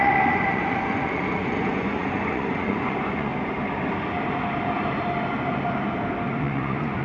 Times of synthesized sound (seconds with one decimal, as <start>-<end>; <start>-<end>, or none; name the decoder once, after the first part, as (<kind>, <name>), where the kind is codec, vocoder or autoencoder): 0.0-3.3 (vocoder, Vocos); 6.4-7.0